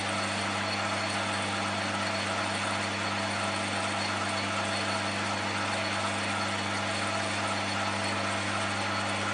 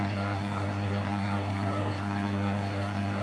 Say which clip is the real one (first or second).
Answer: first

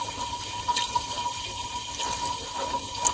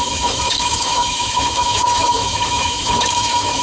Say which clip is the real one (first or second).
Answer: first